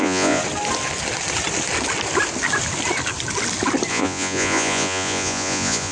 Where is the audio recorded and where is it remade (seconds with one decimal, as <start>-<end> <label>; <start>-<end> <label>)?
0.0-0.4 remade; 0.4-3.9 recorded; 3.9-5.9 remade